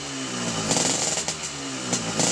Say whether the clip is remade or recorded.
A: recorded